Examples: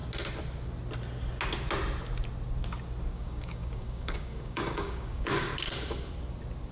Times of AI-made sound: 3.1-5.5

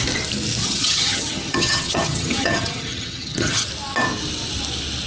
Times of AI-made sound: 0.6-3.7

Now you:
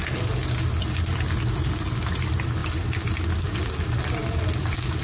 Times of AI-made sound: none

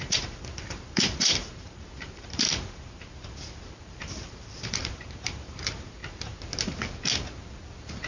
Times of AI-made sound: 0.0-6.0